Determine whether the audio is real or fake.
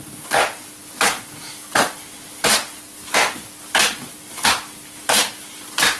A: real